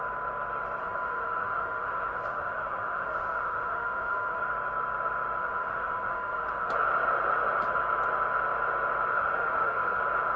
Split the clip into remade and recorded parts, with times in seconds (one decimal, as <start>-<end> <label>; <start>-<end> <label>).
0.0-0.8 recorded; 0.8-4.4 remade; 4.4-5.4 recorded; 5.4-6.7 remade; 6.7-9.1 recorded; 9.1-10.0 remade; 10.0-10.4 recorded